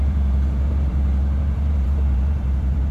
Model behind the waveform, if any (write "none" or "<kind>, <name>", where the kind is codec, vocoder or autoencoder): vocoder, BigVGAN v2